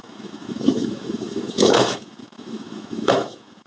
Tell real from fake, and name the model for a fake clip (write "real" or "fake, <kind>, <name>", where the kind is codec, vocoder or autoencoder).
fake, autoencoder, DAC-VAE